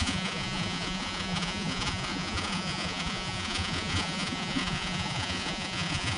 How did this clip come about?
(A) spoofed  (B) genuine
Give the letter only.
A